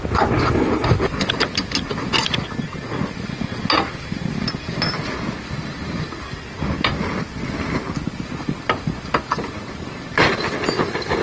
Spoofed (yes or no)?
no